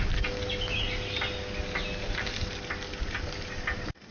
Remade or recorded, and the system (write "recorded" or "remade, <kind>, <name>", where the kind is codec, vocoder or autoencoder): recorded